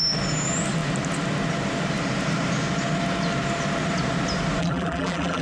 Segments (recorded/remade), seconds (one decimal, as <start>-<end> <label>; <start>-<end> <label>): 0.0-4.6 recorded; 4.6-5.4 remade